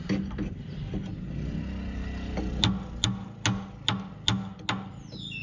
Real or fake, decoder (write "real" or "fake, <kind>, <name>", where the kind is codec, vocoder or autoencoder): real